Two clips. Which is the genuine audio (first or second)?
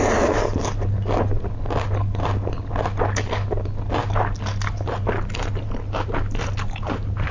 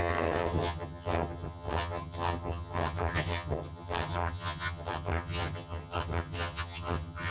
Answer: first